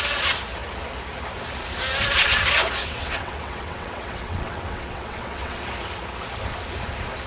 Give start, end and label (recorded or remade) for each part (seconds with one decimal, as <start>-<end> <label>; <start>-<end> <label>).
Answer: 0.0-2.8 recorded; 2.8-5.6 remade; 5.6-7.3 recorded